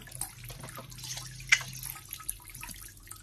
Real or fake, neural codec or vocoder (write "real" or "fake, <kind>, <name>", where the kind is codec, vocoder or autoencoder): real